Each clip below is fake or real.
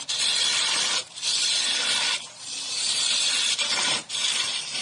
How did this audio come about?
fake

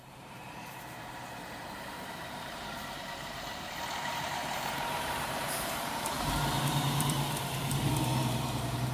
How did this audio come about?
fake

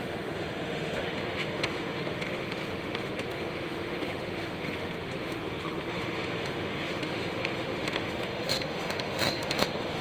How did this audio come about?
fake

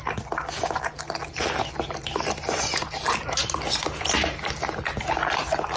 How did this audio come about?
real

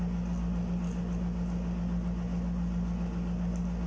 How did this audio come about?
real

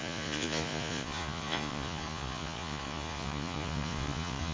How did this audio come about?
fake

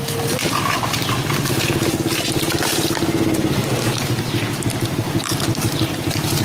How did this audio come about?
real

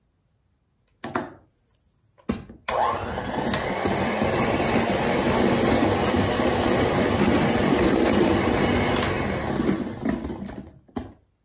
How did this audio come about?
real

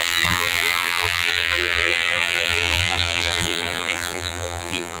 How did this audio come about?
fake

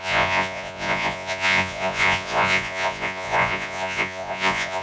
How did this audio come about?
fake